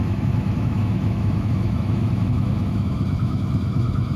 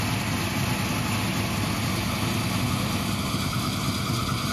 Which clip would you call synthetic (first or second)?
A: first